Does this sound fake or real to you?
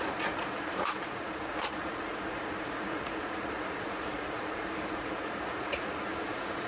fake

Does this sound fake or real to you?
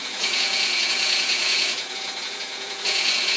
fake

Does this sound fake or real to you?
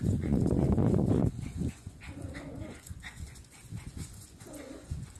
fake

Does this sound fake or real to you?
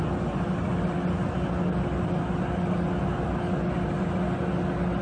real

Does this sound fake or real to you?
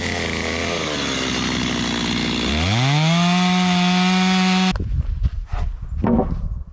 real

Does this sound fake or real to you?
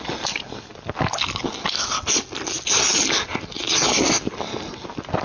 real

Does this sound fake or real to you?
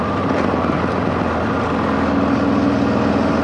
real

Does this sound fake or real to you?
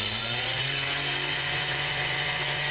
fake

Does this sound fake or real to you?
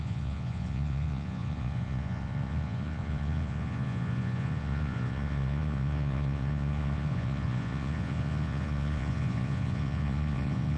fake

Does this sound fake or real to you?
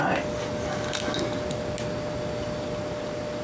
real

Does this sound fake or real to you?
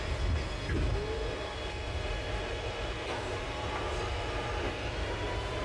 real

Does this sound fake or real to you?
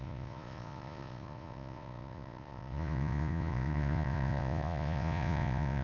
fake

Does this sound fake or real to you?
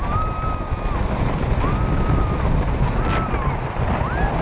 real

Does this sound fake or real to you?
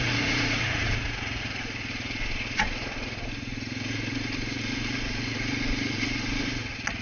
fake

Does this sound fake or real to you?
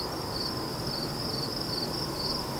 real